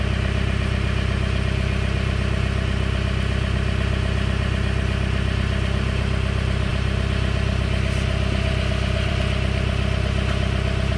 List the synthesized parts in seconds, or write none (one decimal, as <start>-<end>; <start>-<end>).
none